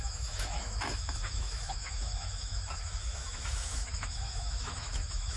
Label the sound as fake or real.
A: fake